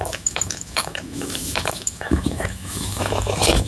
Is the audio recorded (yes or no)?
no